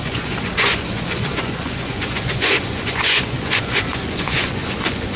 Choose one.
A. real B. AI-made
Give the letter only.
B